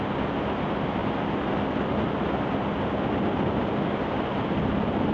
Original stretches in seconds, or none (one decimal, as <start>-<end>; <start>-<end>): 0.0-5.1